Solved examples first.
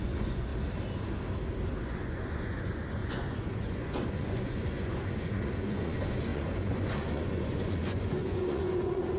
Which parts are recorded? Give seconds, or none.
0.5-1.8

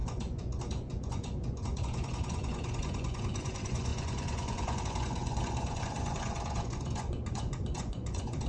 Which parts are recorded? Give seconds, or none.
none

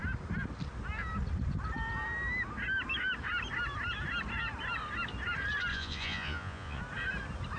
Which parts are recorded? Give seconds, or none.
0.0-5.7; 6.8-7.6

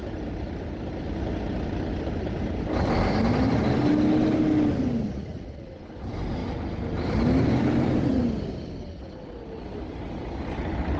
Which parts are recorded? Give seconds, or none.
0.0-5.1; 5.7-11.0